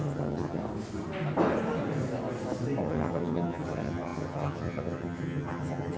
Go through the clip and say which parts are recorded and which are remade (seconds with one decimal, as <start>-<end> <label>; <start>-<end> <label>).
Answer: 0.0-0.6 remade; 0.6-2.8 recorded; 2.8-6.0 remade